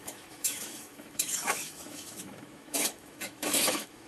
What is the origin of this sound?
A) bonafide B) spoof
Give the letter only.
B